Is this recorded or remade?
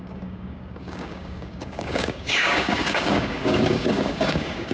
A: remade